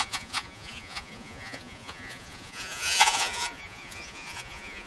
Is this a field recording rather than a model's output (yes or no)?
no